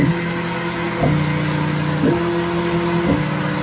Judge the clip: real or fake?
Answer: real